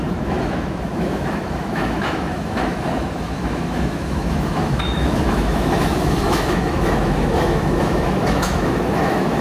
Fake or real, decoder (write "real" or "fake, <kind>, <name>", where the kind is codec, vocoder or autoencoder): fake, autoencoder, DAC-VAE